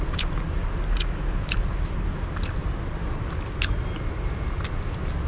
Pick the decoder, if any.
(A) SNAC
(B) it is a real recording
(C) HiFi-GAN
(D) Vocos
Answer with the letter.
B